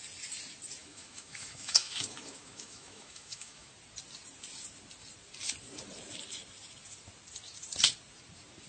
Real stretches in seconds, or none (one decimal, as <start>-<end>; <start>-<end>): 0.0-0.8; 3.7-8.7